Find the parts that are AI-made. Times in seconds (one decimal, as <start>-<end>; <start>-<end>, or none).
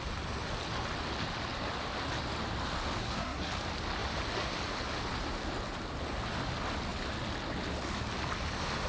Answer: 3.0-3.5